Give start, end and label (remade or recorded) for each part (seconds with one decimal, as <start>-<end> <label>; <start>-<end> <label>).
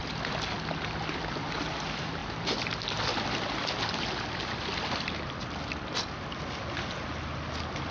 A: 0.0-7.9 recorded